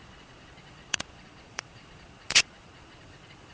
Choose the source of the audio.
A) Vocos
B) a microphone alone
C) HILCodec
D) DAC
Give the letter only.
A